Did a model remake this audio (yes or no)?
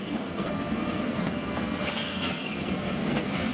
yes